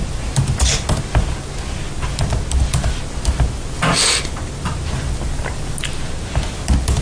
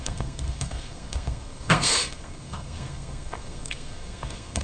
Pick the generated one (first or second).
second